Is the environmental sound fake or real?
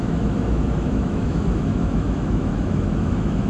fake